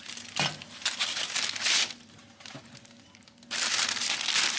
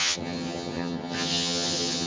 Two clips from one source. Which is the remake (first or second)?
second